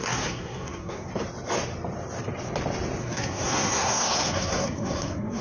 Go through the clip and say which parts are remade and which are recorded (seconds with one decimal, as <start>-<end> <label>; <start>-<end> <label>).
0.0-1.1 remade; 1.1-3.0 recorded; 3.0-5.4 remade